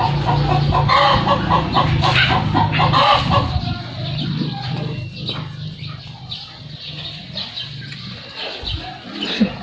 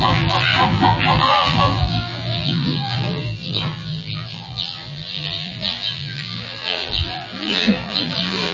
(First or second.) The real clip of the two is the first